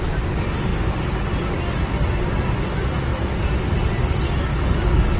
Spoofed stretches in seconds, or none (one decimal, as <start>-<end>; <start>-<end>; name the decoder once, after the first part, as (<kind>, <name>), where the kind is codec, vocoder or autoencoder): none